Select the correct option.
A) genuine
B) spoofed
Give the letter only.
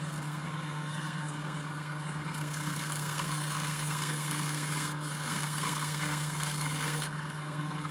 B